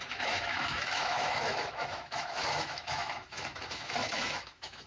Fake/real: fake